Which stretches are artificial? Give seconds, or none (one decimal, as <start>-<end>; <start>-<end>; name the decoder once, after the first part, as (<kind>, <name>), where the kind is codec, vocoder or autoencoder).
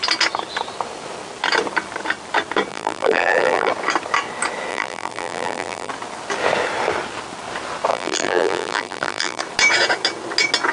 2.7-3.7 (vocoder, BigVGAN v2); 4.7-5.9; 7.9-9.4